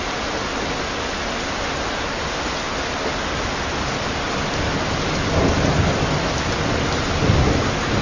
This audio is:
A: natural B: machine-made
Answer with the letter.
A